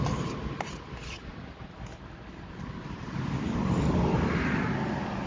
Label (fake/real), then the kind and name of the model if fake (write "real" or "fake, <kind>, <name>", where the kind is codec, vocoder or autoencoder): real